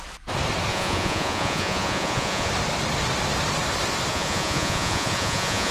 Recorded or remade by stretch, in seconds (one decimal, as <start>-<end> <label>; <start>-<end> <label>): 0.0-0.7 recorded; 0.7-2.5 remade; 2.5-4.1 recorded; 4.1-5.7 remade